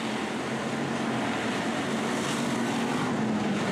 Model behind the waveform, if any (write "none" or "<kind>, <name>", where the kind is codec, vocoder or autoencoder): none